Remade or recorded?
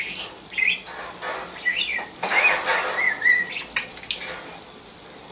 recorded